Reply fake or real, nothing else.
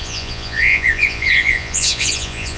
fake